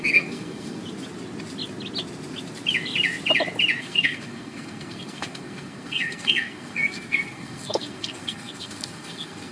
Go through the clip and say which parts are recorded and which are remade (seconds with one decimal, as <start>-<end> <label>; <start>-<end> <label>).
0.0-0.8 remade; 0.8-3.8 recorded; 3.8-9.5 remade